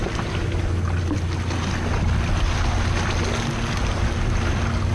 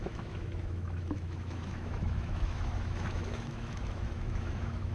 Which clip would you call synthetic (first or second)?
second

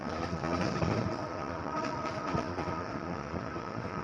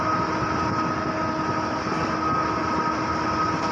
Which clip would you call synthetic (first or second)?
first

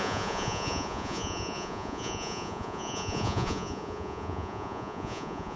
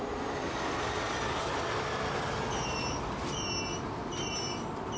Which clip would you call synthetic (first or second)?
first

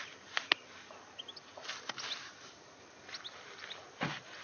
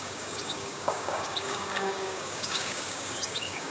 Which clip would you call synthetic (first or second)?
second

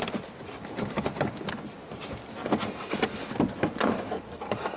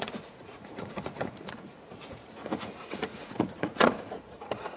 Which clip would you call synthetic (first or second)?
second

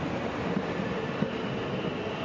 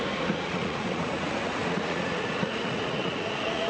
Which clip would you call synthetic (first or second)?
second